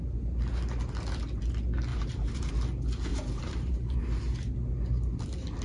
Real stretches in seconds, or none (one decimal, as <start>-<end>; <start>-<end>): 0.0-1.9; 2.5-3.1; 4.0-5.6